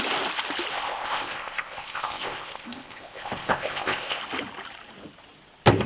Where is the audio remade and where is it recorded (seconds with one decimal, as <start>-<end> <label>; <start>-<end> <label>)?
0.0-0.7 recorded; 0.7-4.2 remade; 4.2-5.9 recorded